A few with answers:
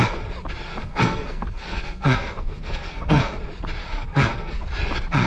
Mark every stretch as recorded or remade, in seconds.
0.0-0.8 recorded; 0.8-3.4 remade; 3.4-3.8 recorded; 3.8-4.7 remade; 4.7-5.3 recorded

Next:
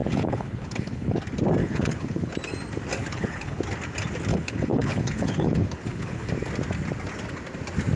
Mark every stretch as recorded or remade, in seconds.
0.0-1.2 remade; 1.2-1.6 recorded; 1.6-2.3 remade; 2.3-3.0 recorded; 3.0-3.6 remade; 3.6-4.3 recorded; 4.3-6.3 remade; 6.3-8.0 recorded

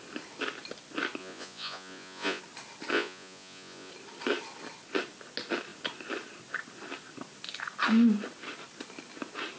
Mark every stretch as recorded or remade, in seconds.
0.0-1.2 recorded; 1.2-2.4 remade; 2.4-2.9 recorded; 2.9-3.9 remade; 3.9-9.6 recorded

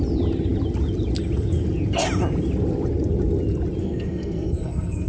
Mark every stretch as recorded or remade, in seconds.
0.0-3.8 recorded; 3.8-5.1 remade